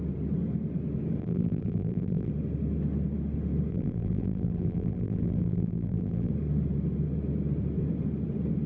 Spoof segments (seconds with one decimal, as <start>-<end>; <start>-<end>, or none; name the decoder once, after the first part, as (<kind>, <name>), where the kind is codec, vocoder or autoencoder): 1.2-2.3 (vocoder, BigVGAN v2); 3.7-6.3